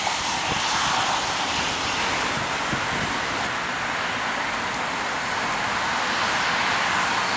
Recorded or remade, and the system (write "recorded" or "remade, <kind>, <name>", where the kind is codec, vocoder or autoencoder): recorded